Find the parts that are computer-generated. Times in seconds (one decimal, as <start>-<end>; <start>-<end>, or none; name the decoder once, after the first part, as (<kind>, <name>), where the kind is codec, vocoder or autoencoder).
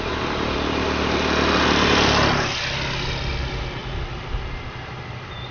none